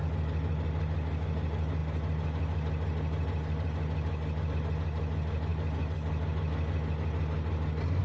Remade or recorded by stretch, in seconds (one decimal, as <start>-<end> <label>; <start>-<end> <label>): 0.0-8.0 recorded